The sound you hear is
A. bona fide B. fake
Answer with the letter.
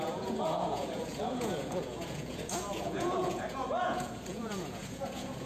B